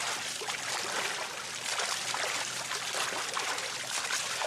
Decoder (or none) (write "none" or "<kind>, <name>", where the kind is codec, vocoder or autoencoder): none